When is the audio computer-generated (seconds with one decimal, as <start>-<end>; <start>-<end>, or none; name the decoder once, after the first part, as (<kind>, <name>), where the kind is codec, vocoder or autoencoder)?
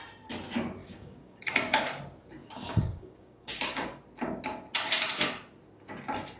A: 0.8-1.8 (codec, DAC); 2.4-4.0